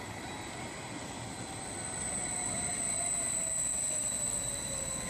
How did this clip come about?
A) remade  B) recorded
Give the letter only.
B